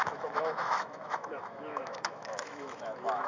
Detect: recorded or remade remade